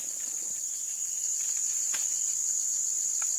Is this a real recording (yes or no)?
yes